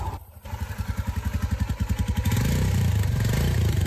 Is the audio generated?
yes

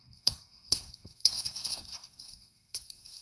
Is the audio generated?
yes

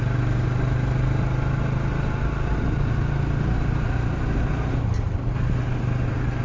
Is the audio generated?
no